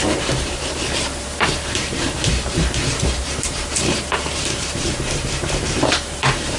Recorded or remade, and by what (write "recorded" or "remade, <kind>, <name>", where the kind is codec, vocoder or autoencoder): remade, vocoder, BigVGAN v2